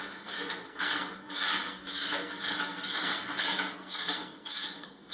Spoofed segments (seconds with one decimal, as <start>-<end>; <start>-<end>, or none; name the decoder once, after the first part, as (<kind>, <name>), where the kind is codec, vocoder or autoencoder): 0.0-5.1 (codec, SNAC)